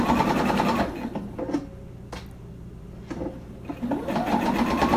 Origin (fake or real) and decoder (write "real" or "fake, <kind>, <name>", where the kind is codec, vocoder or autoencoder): real